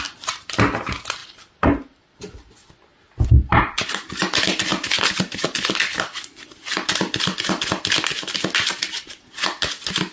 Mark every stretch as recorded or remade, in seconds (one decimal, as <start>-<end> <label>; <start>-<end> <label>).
0.0-10.1 recorded